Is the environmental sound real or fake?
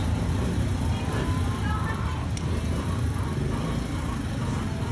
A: real